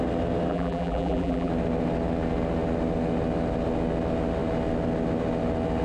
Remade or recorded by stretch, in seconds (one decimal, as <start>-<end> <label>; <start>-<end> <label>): 0.0-0.5 recorded; 0.5-1.5 remade; 1.5-5.8 recorded